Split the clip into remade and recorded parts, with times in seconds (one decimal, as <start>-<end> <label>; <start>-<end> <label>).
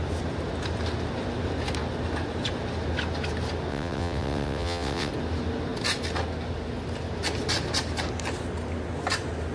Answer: 0.0-3.7 recorded; 3.7-5.1 remade; 5.1-9.5 recorded